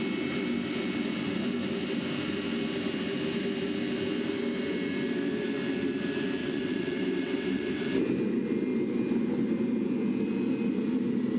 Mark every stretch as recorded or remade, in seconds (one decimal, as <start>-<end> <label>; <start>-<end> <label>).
0.0-6.4 recorded; 6.4-7.9 remade; 7.9-11.4 recorded